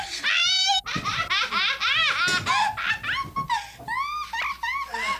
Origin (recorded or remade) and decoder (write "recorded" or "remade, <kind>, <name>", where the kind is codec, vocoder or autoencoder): recorded